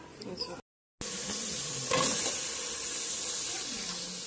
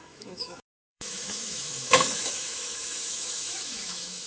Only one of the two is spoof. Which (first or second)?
second